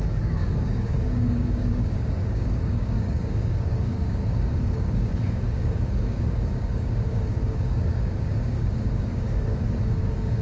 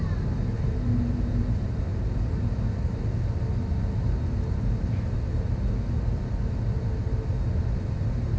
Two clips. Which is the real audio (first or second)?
second